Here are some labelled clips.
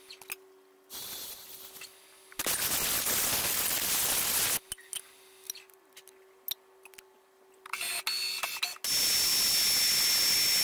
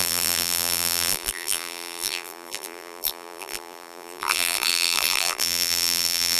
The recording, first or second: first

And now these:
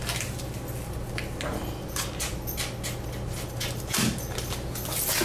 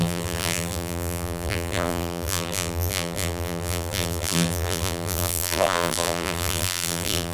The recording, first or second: first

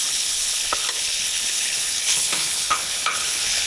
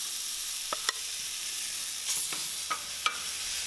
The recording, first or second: second